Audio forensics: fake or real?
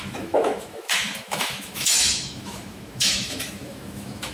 fake